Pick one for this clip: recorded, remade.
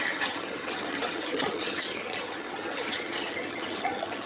remade